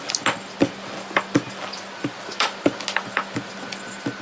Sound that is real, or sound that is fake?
real